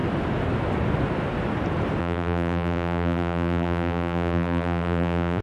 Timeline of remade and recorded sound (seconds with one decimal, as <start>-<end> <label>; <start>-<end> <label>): 0.0-2.0 recorded; 2.0-5.4 remade